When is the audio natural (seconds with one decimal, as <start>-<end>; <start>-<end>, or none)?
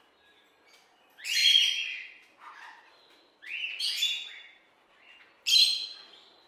0.0-6.5